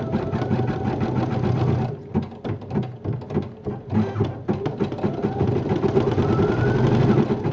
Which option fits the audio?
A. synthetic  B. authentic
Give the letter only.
B